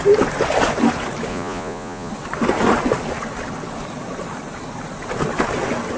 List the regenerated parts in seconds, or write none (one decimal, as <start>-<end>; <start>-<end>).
1.3-2.1